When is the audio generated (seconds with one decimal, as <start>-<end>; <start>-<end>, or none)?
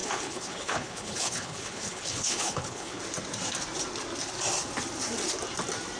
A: 0.0-3.0